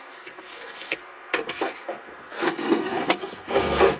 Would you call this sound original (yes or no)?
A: no